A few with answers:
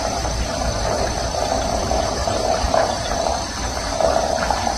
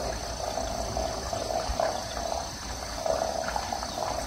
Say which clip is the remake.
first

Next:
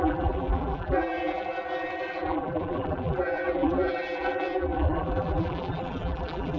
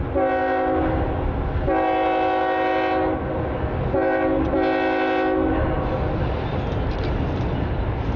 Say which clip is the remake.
first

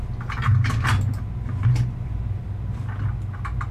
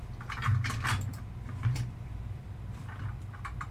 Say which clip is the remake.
second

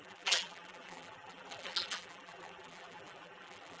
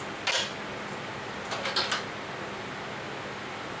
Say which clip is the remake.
first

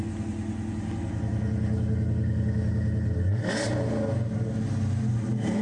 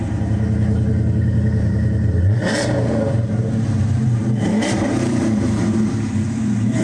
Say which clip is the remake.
second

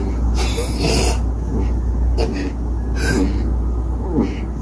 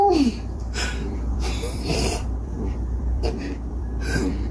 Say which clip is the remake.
second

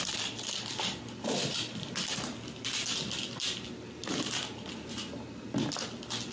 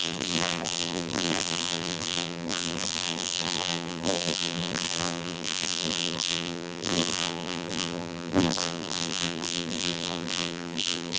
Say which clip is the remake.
second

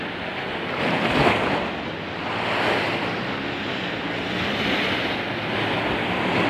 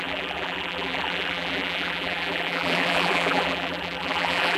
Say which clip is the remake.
second